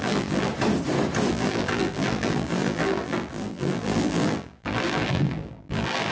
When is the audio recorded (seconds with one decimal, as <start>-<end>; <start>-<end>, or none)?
0.5-1.3